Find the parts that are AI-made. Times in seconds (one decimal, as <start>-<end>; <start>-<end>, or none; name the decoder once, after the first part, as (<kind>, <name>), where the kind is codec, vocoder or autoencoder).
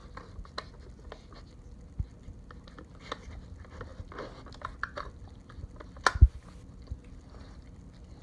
none